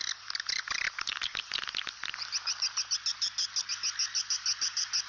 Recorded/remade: recorded